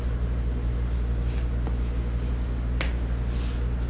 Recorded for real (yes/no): yes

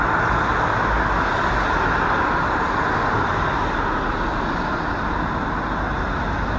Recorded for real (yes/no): yes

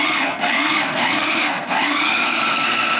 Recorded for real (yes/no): no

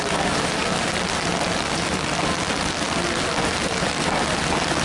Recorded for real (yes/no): yes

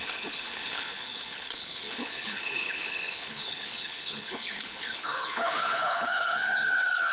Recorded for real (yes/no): no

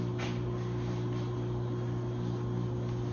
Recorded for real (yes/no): yes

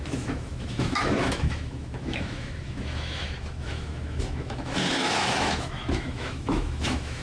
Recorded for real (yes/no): no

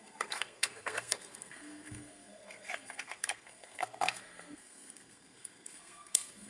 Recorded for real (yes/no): no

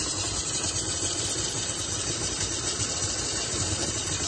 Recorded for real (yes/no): no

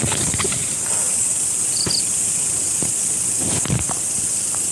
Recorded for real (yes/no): yes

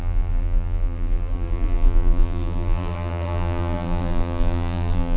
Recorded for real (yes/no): no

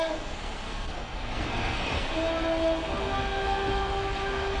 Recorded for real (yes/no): no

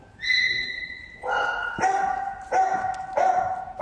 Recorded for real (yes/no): yes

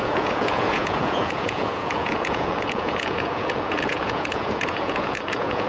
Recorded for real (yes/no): no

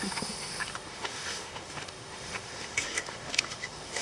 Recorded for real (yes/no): no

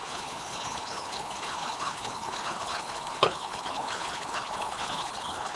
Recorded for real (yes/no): no